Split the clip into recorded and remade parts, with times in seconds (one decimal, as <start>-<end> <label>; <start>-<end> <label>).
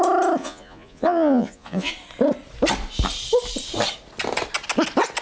0.0-0.4 recorded; 0.4-1.9 remade; 1.9-5.2 recorded